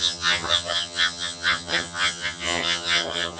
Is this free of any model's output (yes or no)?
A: no